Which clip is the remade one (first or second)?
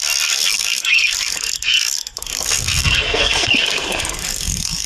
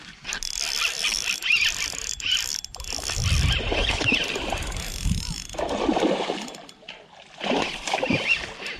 first